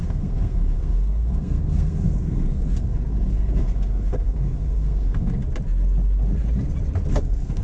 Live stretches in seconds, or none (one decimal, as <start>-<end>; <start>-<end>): 5.4-7.1